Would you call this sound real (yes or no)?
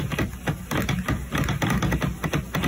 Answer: yes